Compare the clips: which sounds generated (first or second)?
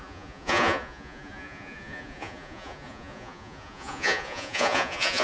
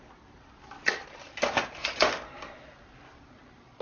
first